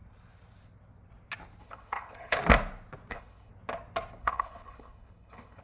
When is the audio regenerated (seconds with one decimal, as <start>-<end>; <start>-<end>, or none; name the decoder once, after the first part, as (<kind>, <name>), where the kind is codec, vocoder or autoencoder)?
1.6-2.4 (codec, HILCodec); 3.1-3.5; 4.2-5.6